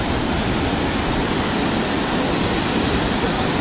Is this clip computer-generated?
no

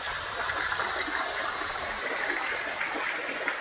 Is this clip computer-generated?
yes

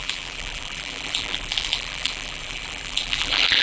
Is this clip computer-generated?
yes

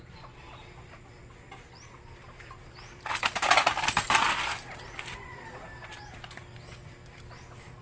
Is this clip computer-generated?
no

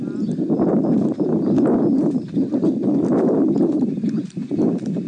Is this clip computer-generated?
no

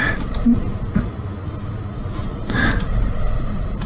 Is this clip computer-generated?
no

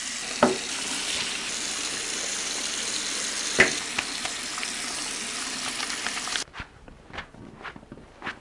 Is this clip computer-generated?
no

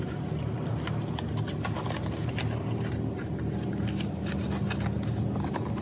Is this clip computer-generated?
no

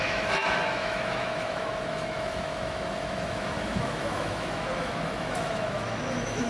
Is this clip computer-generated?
yes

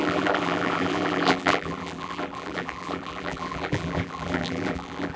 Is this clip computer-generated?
yes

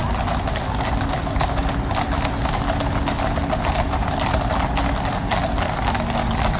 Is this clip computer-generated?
no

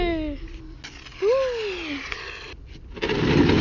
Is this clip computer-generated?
no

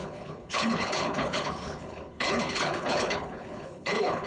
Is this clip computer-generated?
yes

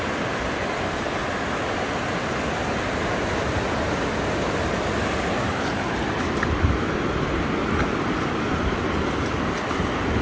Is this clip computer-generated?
no